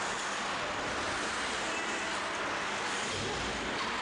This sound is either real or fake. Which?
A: real